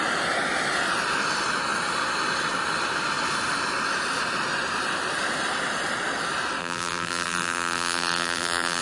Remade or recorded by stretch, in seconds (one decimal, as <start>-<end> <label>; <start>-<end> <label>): 0.0-6.6 recorded; 6.6-8.8 remade